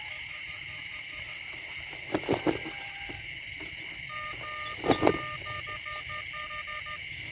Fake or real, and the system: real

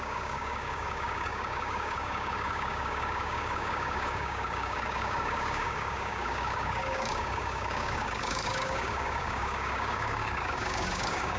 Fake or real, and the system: fake, codec, DAC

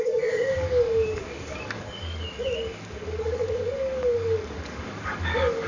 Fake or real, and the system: fake, codec, DAC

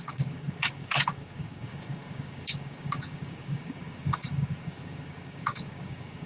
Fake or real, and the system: fake, codec, DAC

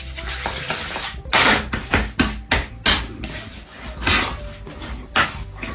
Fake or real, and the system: real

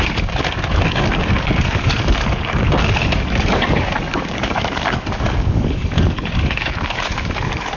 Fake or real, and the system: fake, codec, DAC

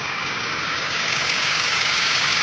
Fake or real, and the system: fake, codec, DAC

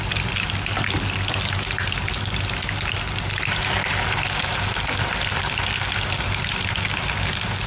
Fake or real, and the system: real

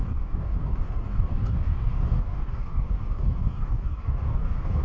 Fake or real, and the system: fake, codec, DAC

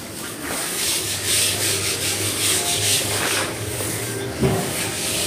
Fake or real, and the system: fake, codec, DAC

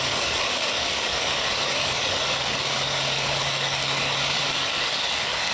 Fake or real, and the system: fake, codec, DAC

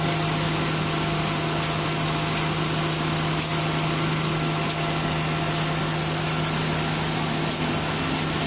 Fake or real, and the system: real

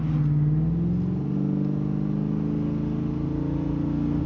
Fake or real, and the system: real